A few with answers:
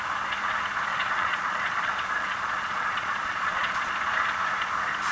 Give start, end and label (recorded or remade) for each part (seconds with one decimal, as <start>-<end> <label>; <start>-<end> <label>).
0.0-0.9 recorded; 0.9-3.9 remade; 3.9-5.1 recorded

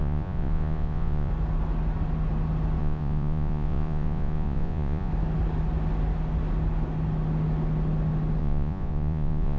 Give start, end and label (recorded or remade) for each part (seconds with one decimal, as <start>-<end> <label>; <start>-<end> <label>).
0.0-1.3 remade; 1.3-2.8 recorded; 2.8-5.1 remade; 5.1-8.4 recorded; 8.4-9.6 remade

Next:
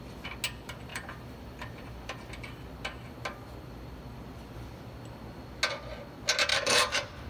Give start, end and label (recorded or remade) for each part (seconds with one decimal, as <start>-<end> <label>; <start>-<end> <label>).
0.0-0.9 recorded; 0.9-2.3 remade; 2.3-6.5 recorded; 6.5-7.3 remade

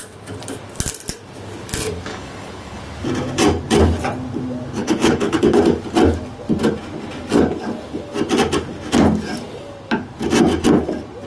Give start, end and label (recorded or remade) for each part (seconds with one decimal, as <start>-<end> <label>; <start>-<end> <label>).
0.0-2.1 recorded; 2.1-2.8 remade; 2.8-4.8 recorded; 4.8-5.6 remade; 5.6-11.3 recorded

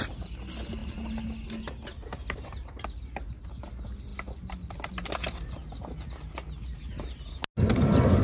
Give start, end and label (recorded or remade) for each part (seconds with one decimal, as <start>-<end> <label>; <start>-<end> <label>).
0.0-8.2 recorded

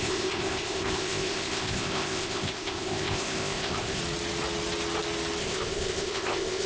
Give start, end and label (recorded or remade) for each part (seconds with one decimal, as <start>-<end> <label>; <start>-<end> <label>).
0.0-4.0 remade; 4.0-5.4 recorded; 5.4-6.7 remade